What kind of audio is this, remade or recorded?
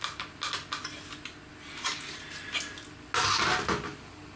recorded